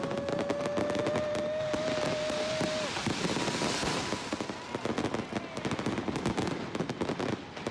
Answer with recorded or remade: recorded